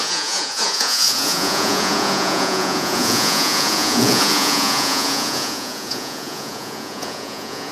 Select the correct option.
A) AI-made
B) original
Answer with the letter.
A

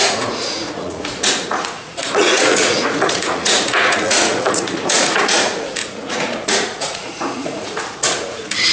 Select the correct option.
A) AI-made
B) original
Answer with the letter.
A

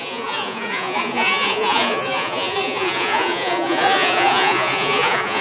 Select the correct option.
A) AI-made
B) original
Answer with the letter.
A